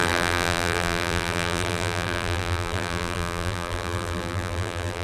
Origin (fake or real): fake